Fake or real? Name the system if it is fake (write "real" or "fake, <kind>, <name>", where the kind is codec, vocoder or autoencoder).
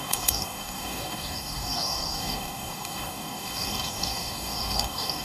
fake, codec, DAC